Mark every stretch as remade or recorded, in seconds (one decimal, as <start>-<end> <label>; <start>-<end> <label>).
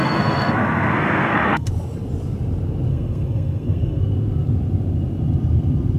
0.0-1.7 remade; 1.7-2.9 recorded; 2.9-4.0 remade; 4.0-6.0 recorded